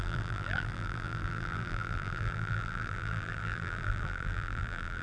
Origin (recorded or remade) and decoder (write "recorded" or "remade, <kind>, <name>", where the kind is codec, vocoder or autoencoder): remade, vocoder, BigVGAN v2